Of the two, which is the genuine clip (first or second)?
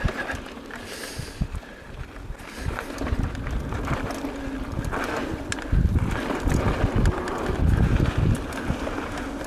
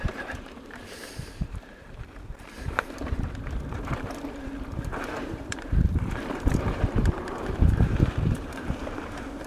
first